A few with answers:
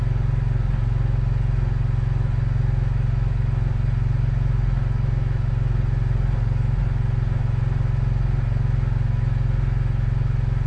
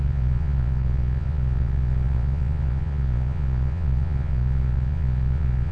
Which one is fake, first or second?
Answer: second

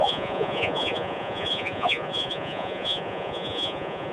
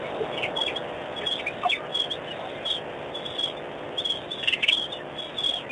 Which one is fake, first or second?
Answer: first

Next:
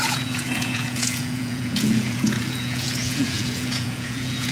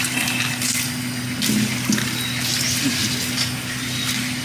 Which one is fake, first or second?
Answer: first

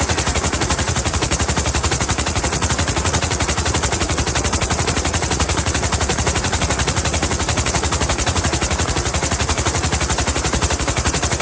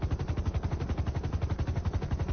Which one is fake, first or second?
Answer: first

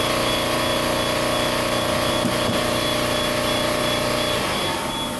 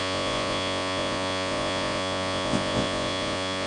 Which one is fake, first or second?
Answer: second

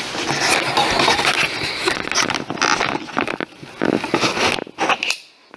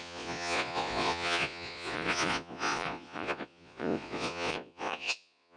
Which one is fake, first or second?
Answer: second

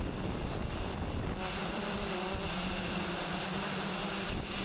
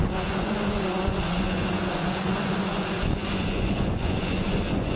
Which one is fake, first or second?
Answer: second